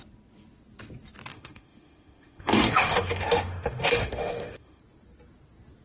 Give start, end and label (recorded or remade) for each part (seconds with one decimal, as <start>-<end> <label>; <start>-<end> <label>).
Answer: 0.0-1.3 recorded; 1.3-4.8 remade; 4.8-5.8 recorded